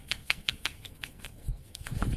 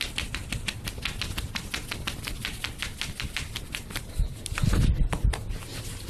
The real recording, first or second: second